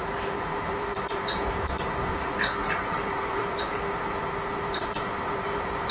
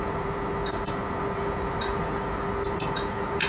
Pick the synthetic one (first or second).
first